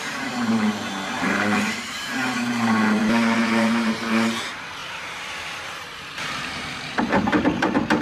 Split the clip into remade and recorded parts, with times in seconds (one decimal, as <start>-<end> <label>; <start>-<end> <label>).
0.0-8.0 remade